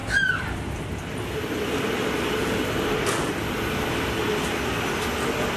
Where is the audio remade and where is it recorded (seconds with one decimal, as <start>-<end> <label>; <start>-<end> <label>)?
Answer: 0.0-5.6 recorded